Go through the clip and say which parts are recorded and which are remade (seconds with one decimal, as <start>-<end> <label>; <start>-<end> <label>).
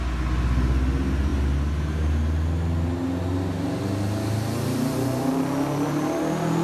0.0-6.6 recorded